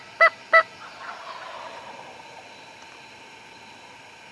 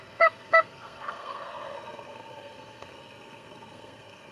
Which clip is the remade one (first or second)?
second